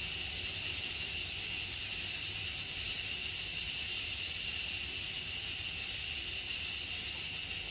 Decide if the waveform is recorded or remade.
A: recorded